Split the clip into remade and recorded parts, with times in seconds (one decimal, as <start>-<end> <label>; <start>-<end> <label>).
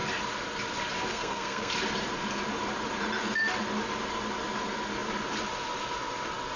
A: 0.0-1.1 recorded; 1.1-1.7 remade; 1.7-6.6 recorded